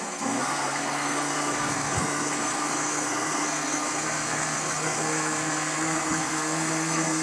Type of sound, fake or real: fake